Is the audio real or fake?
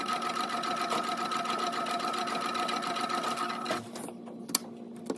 real